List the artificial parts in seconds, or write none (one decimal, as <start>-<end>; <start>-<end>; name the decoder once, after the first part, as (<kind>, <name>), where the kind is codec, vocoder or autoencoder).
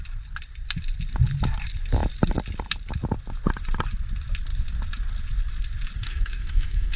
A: 6.0-7.0 (codec, SNAC)